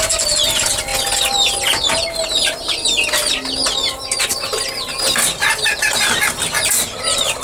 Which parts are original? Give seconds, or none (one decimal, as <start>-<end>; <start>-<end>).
0.0-7.4